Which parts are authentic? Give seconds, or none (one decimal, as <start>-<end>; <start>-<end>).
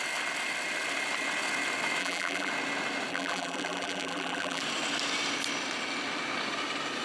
0.0-2.0; 2.5-3.1; 4.6-7.0